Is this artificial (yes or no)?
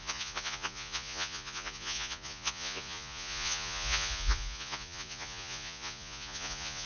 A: yes